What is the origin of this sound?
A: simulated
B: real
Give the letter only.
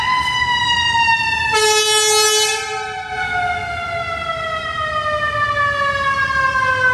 B